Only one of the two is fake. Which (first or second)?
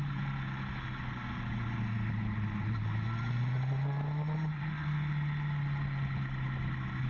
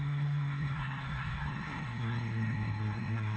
second